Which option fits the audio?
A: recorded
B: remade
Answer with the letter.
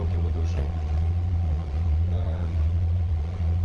B